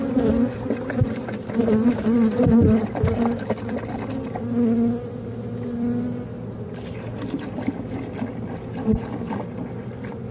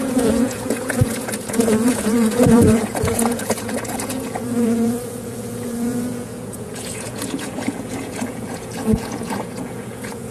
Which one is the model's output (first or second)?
second